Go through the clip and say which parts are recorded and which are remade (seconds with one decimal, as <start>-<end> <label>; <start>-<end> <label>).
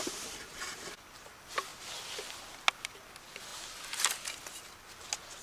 0.0-5.4 recorded